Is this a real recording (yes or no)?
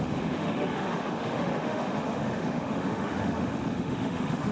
no